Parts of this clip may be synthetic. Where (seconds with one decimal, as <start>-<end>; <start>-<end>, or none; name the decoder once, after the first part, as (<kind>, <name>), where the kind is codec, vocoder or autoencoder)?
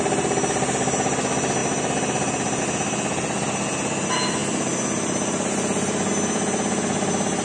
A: none